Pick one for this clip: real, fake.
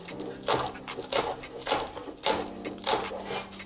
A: real